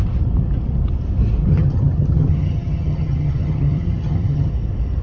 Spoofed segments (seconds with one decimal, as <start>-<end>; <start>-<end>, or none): 1.5-4.5

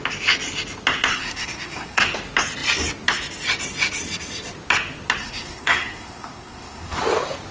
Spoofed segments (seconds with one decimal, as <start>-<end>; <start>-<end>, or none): 1.1-2.0; 5.2-7.0